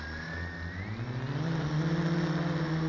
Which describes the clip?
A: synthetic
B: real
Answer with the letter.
B